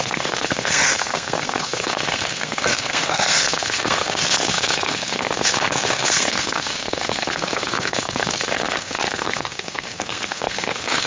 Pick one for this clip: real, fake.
fake